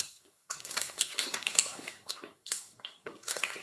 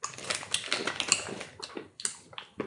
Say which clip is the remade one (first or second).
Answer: first